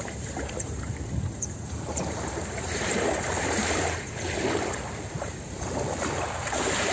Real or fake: fake